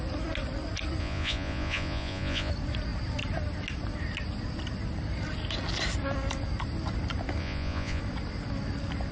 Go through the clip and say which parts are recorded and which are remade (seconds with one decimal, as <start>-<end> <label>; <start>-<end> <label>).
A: 0.0-1.0 recorded; 1.0-2.5 remade; 2.5-7.4 recorded; 7.4-8.0 remade; 8.0-9.1 recorded